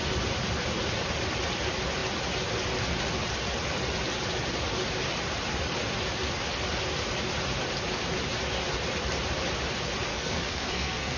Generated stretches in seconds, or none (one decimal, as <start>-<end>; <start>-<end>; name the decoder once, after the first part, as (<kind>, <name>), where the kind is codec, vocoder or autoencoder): 10.1-11.2 (codec, SNAC)